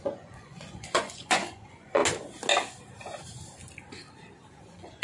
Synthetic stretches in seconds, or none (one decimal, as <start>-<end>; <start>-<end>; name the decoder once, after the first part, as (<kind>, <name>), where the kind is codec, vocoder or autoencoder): 0.0-2.0 (vocoder, Vocos); 4.5-5.0